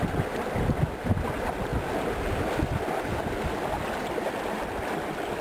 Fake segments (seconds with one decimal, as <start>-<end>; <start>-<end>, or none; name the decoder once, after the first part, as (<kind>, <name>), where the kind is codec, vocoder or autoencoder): none